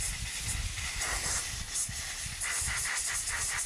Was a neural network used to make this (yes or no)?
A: no